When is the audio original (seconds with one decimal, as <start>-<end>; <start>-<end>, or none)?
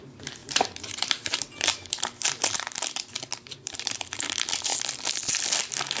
4.7-6.0